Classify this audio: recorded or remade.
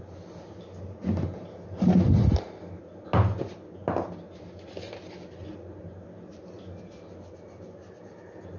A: recorded